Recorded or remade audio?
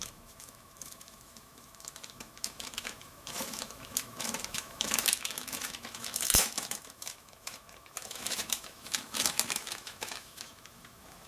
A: remade